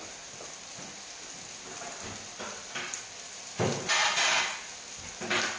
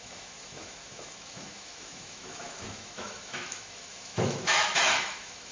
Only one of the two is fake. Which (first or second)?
second